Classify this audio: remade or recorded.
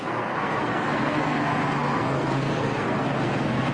remade